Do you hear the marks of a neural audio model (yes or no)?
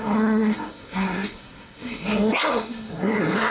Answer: yes